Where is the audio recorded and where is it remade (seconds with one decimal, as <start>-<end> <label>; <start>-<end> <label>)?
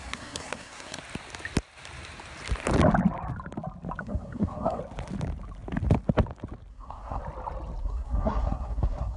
0.0-1.0 remade; 1.0-4.0 recorded; 4.0-4.8 remade; 4.8-6.7 recorded; 6.7-7.2 remade; 7.2-7.8 recorded; 7.8-9.2 remade